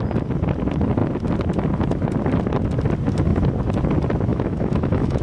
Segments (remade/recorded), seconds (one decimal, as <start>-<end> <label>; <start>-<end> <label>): 0.0-4.3 recorded; 4.3-5.2 remade